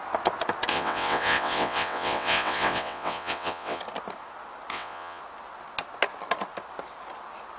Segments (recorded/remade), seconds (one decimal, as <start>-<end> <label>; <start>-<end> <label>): 0.0-0.7 recorded; 0.7-3.8 remade; 3.8-4.7 recorded; 4.7-5.2 remade; 5.2-7.6 recorded